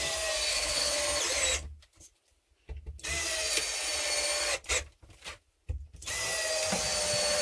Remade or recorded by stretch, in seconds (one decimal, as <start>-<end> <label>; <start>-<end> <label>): 0.0-0.5 recorded; 0.5-1.0 remade; 1.0-7.4 recorded